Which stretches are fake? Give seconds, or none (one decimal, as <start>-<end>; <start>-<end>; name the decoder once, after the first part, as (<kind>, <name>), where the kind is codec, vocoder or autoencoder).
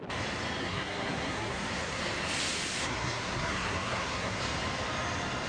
0.6-2.0 (codec, SNAC); 2.8-4.4